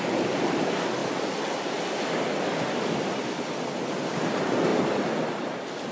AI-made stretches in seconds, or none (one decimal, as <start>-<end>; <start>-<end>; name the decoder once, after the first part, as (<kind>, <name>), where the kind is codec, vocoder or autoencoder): none